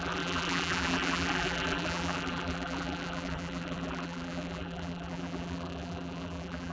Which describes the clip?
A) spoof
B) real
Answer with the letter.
A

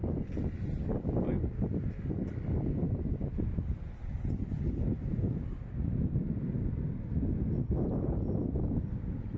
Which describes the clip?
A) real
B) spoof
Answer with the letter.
A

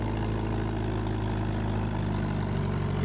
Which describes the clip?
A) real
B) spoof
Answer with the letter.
A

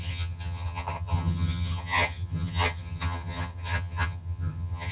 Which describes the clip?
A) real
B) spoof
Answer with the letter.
B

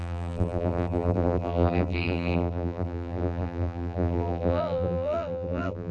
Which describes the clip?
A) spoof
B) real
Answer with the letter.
A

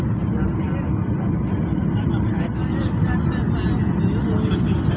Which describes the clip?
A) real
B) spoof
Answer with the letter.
A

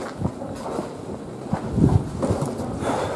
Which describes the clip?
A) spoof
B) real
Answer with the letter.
B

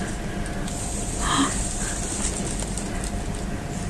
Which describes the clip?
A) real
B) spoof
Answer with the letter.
A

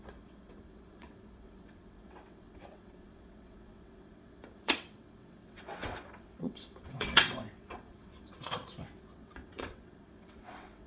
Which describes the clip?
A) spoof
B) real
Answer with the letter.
A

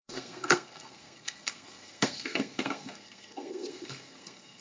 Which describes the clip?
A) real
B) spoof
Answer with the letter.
B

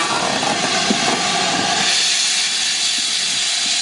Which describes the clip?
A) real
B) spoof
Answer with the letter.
A